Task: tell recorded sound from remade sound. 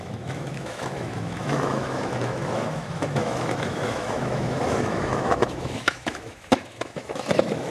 remade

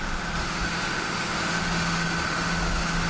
remade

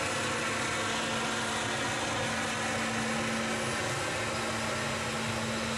recorded